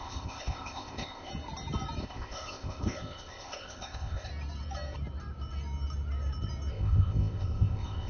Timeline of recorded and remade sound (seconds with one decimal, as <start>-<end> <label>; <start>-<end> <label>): 0.0-1.3 remade; 1.3-2.0 recorded; 2.0-4.3 remade; 4.3-6.7 recorded; 6.7-8.1 remade